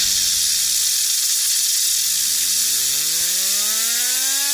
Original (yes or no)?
yes